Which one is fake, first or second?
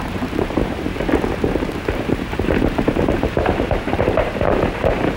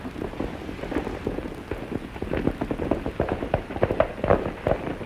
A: first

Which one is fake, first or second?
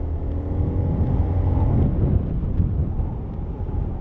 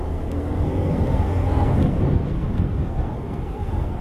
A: second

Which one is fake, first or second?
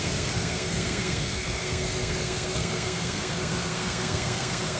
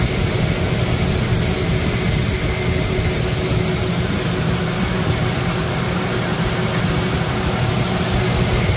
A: first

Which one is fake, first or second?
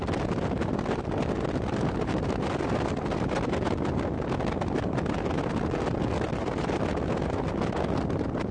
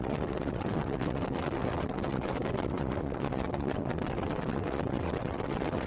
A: second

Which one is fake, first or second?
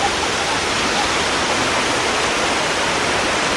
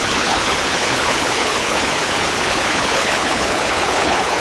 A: second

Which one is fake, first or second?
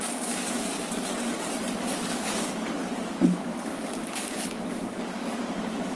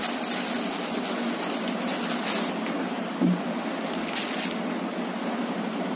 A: first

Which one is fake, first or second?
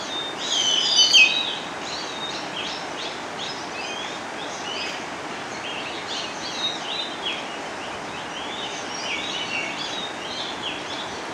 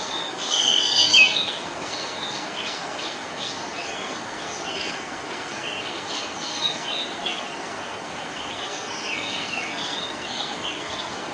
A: second